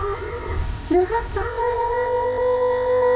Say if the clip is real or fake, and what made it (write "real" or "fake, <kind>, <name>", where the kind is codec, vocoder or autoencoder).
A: fake, codec, ZipCodec